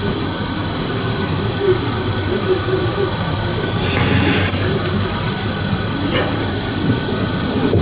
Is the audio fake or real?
real